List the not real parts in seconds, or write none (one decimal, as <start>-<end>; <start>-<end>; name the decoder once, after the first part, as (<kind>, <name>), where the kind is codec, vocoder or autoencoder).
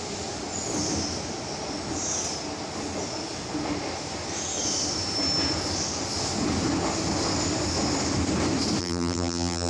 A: 8.8-9.7 (vocoder, BigVGAN v2)